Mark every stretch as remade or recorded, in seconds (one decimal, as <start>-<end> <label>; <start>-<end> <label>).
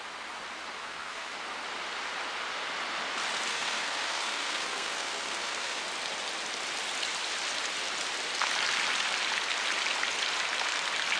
0.0-0.8 recorded; 0.8-1.3 remade; 1.3-3.5 recorded; 3.5-5.8 remade; 5.8-11.2 recorded